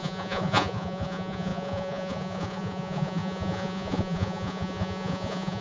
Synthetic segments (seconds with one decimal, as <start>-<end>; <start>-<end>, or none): 0.0-5.6